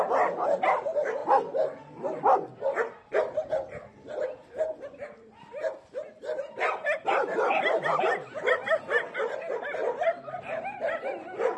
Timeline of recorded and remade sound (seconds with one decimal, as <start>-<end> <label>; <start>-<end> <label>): 0.0-9.8 recorded; 9.8-11.6 remade